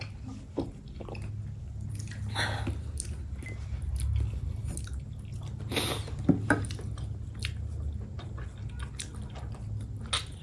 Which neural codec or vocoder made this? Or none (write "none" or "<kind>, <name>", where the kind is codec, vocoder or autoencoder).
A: none